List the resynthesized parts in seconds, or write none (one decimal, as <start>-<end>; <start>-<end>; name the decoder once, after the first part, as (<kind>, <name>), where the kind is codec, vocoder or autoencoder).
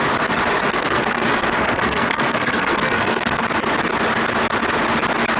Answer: 0.6-3.4 (codec, SNAC)